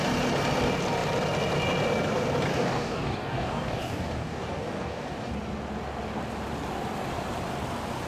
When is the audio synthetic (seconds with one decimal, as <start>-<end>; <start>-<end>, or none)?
2.5-5.3